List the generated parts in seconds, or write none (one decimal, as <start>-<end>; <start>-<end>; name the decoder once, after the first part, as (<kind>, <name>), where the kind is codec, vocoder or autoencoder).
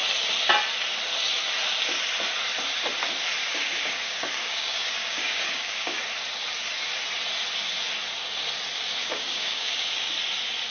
3.4-6.0 (codec, DAC); 9.0-10.1